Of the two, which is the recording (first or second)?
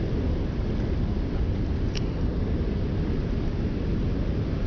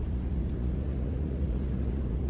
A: first